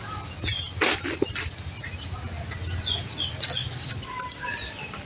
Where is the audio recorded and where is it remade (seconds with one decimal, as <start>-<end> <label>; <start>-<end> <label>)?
0.0-0.5 recorded; 0.5-2.4 remade; 2.4-3.6 recorded; 3.6-5.1 remade